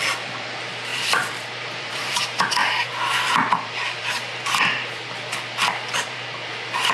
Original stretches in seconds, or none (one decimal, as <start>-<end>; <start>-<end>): none